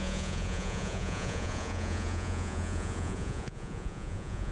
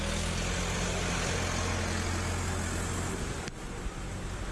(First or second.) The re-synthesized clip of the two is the first